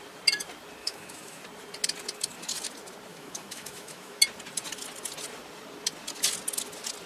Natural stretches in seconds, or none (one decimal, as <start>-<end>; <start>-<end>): 0.0-0.8; 1.4-3.1; 4.2-7.1